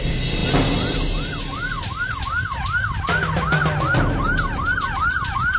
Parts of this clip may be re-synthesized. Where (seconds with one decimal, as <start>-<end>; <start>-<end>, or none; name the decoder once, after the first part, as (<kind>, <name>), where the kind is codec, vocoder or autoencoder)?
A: none